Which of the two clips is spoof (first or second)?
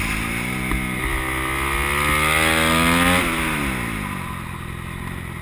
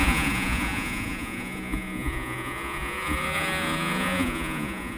second